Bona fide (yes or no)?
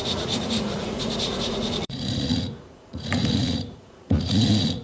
no